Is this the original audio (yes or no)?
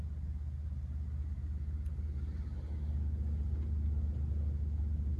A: yes